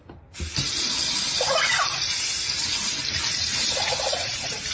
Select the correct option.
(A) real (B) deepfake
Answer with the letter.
A